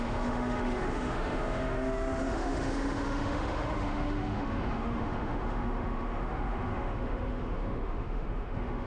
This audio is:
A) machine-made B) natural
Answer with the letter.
A